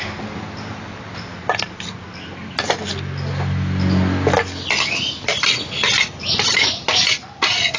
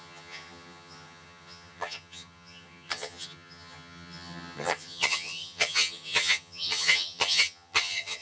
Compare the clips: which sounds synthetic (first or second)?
second